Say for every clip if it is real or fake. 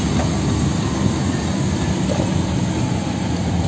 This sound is real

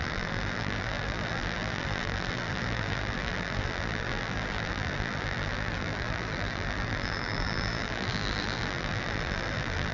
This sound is fake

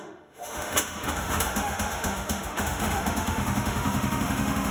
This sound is fake